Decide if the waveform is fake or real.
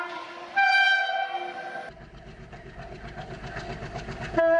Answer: real